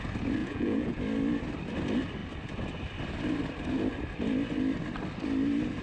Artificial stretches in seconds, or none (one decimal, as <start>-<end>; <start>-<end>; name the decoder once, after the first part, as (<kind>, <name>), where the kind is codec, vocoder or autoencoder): 0.4-1.0 (vocoder, Vocos)